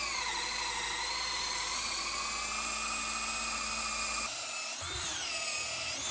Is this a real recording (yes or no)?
yes